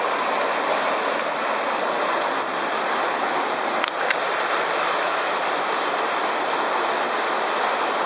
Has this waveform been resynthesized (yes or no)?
no